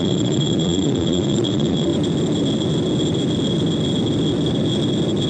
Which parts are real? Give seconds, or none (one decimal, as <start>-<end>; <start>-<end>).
1.9-5.3